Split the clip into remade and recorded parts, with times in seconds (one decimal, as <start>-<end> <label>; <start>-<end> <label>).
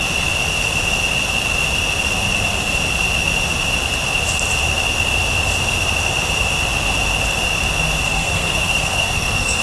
0.0-8.1 recorded; 8.1-9.6 remade